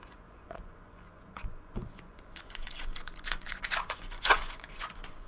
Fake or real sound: fake